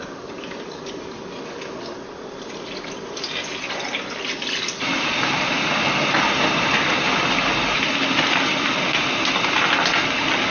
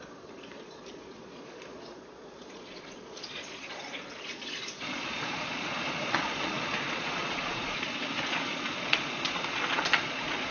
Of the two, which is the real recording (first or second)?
first